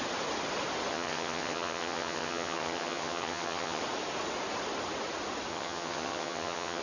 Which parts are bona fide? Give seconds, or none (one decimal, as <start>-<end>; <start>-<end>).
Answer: 0.0-0.9; 3.8-5.5